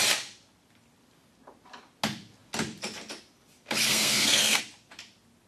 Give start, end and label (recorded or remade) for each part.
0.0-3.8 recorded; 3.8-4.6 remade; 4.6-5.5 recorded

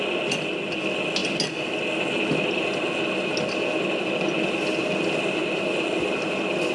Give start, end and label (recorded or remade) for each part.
0.0-6.7 recorded

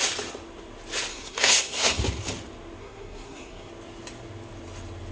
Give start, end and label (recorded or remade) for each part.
0.0-1.1 recorded; 1.1-2.0 remade; 2.0-2.8 recorded; 2.8-3.7 remade; 3.7-5.1 recorded

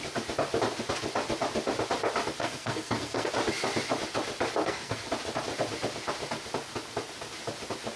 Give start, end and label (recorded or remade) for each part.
0.0-2.4 recorded; 2.4-3.3 remade; 3.3-4.6 recorded; 4.6-5.1 remade; 5.1-8.0 recorded

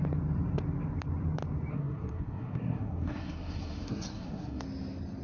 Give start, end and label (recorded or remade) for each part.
0.0-1.7 recorded; 1.7-4.6 remade; 4.6-5.2 recorded

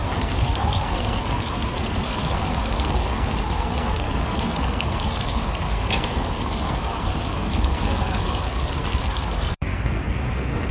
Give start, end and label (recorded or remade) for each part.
0.0-10.7 remade

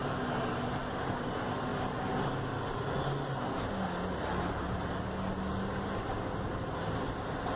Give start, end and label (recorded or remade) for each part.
0.0-7.6 recorded

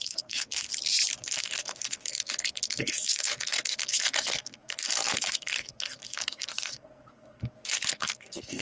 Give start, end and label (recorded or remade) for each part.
0.0-0.7 remade; 0.7-1.2 recorded; 1.2-8.6 remade